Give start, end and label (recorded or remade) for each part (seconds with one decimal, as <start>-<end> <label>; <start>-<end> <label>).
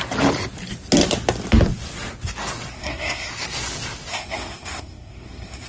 0.0-2.7 recorded; 2.7-3.3 remade; 3.3-4.1 recorded; 4.1-5.7 remade